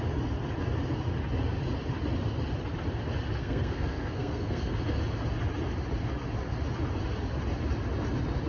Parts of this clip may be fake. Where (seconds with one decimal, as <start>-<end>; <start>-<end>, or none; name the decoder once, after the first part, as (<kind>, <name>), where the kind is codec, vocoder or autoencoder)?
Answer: 3.4-4.8 (codec, SNAC)